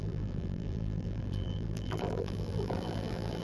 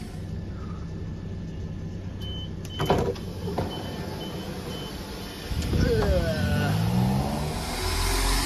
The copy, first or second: first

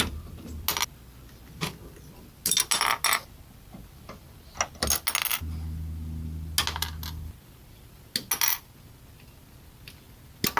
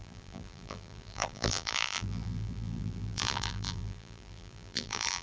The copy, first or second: second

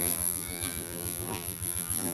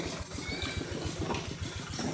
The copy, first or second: first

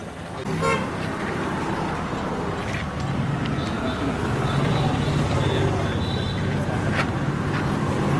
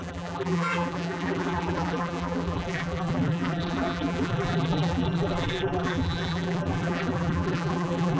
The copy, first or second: second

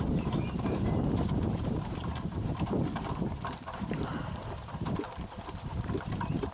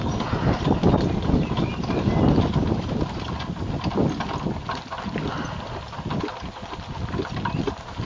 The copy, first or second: first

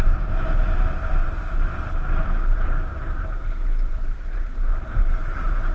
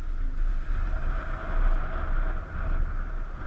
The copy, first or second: first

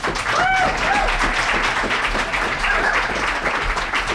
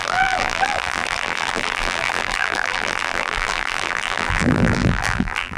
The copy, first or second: second